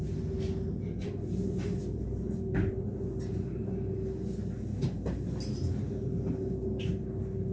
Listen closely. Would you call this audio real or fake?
real